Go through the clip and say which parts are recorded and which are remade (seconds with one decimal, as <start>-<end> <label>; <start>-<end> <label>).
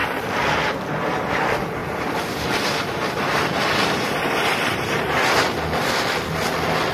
0.0-1.8 recorded; 1.8-5.9 remade; 5.9-6.9 recorded